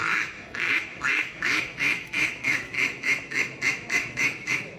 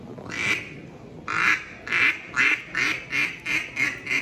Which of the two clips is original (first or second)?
second